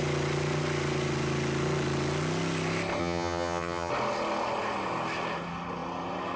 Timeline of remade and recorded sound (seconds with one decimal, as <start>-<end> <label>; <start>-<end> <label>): 0.0-3.0 recorded; 3.0-3.9 remade; 3.9-6.4 recorded